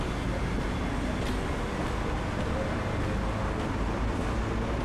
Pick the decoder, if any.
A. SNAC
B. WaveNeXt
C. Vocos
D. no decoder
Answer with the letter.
D